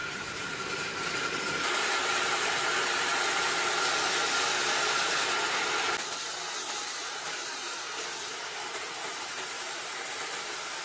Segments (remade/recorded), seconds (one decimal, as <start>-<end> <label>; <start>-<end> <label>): 0.0-1.4 remade; 1.4-7.0 recorded; 7.0-10.0 remade; 10.0-10.8 recorded